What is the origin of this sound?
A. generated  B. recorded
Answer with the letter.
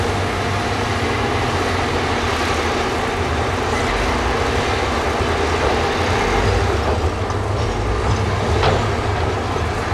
B